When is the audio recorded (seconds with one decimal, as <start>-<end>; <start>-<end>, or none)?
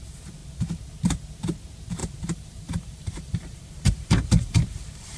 0.0-2.0